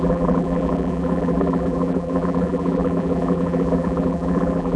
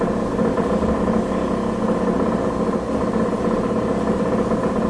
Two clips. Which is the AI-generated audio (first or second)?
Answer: first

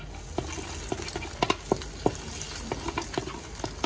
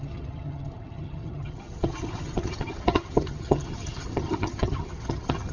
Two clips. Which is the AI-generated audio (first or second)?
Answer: second